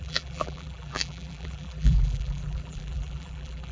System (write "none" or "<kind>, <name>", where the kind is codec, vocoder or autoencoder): vocoder, BigVGAN v2